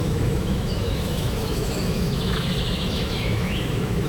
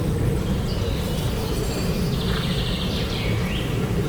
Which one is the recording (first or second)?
second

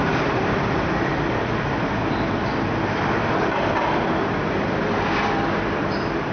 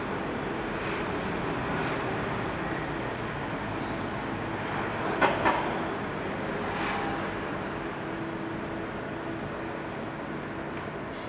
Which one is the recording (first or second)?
second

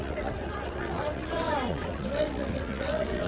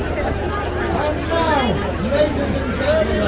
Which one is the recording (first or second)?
second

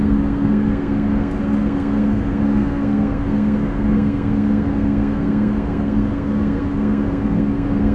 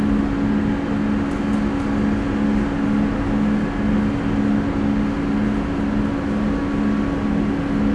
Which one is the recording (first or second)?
second